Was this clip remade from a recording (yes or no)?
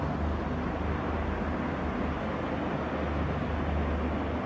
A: no